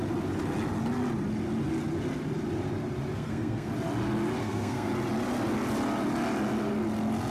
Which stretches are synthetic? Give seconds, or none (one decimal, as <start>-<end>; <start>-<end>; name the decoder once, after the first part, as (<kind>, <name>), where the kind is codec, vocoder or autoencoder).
3.1-3.7 (codec, SNAC); 4.4-4.9